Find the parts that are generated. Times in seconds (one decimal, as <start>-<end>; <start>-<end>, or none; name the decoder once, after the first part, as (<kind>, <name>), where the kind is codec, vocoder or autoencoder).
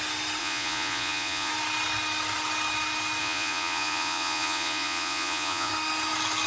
0.4-1.5 (vocoder, Vocos); 3.2-5.7